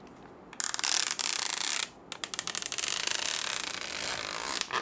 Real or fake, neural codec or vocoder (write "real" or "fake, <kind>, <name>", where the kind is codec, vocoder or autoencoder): real